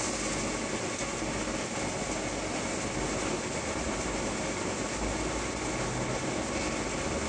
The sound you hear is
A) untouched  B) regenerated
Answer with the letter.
A